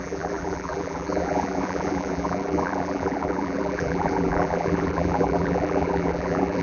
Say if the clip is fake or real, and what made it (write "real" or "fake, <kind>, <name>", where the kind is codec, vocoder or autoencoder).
fake, vocoder, BigVGAN v2